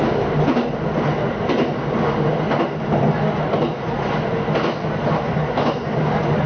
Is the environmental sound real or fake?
real